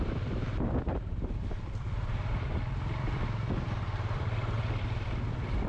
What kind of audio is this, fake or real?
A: fake